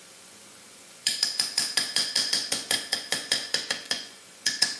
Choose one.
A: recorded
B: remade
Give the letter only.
B